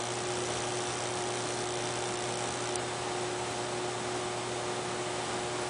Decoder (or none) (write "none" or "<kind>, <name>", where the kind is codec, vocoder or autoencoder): none